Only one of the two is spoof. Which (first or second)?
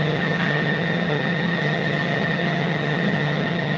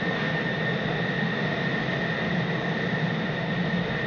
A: first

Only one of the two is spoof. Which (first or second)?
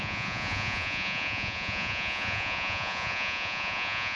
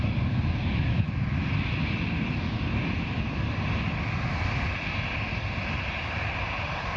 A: first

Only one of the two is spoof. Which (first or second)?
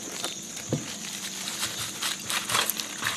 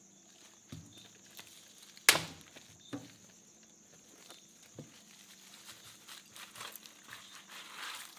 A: first